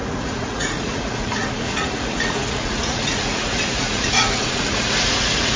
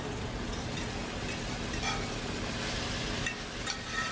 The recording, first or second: second